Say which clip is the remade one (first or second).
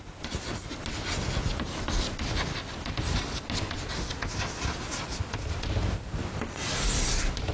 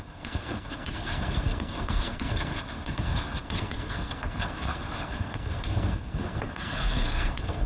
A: second